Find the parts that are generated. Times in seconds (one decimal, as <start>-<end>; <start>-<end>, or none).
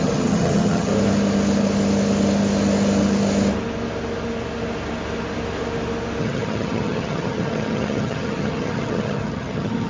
0.0-0.9; 6.2-9.9